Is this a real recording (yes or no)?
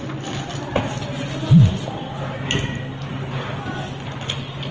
yes